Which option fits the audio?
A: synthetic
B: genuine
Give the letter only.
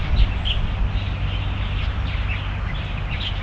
B